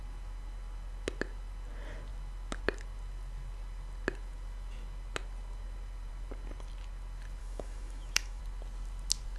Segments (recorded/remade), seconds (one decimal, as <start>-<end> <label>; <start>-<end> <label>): 0.0-7.4 recorded; 7.4-8.4 remade; 8.4-9.4 recorded